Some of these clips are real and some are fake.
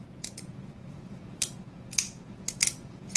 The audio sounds fake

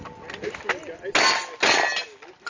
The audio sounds real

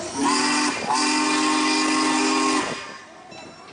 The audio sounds real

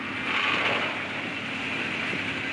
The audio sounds real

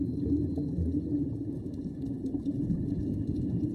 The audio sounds fake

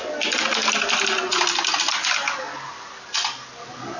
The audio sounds real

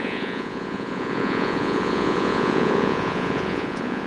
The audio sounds fake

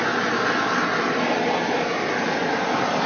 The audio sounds real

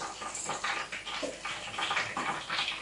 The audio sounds real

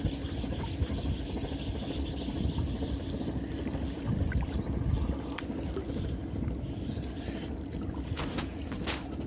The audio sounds real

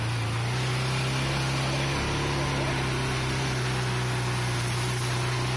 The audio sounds real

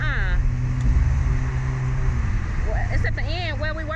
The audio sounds real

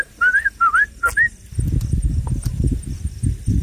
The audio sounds real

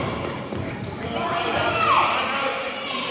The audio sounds real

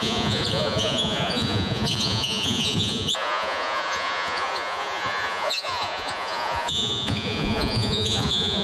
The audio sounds fake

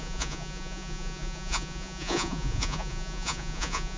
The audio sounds fake